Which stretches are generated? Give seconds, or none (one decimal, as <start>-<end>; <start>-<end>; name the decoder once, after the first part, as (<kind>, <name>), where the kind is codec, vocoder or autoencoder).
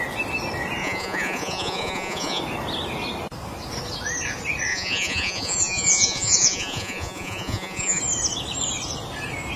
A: 0.8-2.4 (vocoder, Vocos); 4.7-8.0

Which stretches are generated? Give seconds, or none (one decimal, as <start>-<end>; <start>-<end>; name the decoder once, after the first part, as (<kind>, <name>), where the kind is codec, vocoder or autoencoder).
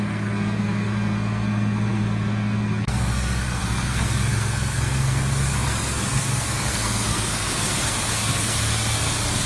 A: 0.0-9.5 (codec, SNAC)